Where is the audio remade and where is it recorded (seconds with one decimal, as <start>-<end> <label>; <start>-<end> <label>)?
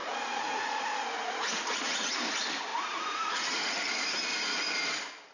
0.0-2.1 remade; 2.1-2.7 recorded; 2.7-4.1 remade; 4.1-5.3 recorded